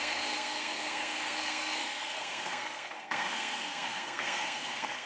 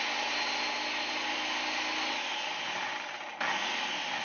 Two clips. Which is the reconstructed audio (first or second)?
first